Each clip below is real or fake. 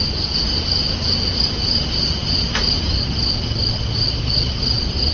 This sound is real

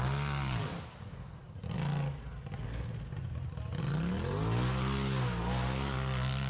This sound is real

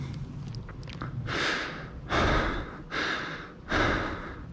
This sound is real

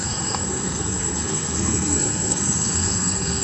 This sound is fake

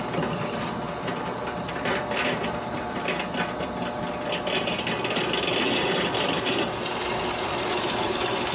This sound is real